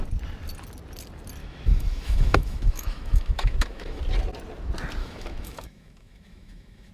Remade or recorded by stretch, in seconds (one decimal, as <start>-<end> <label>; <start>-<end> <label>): 0.0-1.4 recorded; 1.4-4.0 remade; 4.0-5.0 recorded; 5.0-6.9 remade